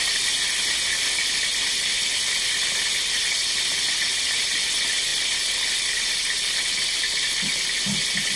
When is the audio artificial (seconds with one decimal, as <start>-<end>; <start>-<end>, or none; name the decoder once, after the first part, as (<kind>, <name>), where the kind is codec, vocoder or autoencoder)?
none